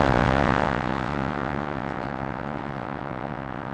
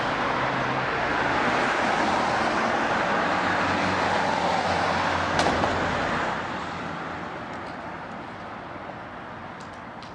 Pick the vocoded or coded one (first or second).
first